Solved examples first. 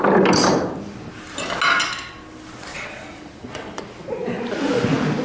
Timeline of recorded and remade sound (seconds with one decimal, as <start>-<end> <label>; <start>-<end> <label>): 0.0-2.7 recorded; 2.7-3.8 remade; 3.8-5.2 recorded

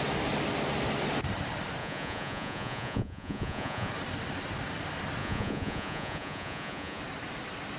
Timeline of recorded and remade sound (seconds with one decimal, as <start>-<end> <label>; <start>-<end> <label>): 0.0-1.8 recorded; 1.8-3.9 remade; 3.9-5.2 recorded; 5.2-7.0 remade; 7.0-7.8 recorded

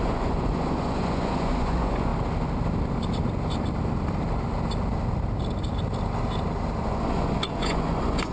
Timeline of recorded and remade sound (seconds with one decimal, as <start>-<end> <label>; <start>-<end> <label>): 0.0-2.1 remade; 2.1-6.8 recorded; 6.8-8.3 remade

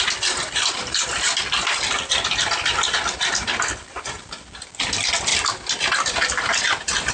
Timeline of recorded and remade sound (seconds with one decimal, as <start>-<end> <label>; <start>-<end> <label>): 0.0-7.1 recorded

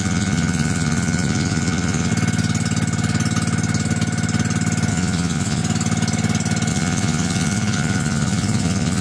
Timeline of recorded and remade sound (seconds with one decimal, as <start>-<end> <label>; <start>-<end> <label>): 0.0-2.1 remade; 2.1-4.9 recorded; 4.9-5.6 remade; 5.6-6.7 recorded; 6.7-9.0 remade

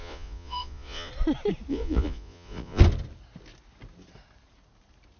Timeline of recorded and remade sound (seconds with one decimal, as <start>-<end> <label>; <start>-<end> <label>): 0.0-1.1 remade; 1.1-1.7 recorded; 1.7-2.8 remade; 2.8-5.2 recorded